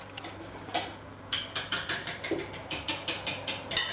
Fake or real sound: real